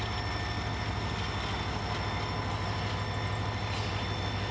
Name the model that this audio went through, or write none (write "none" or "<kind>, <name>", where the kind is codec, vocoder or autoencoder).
none